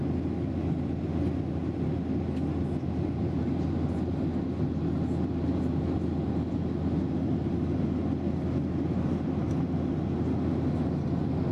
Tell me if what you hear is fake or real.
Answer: real